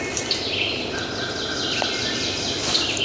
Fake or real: real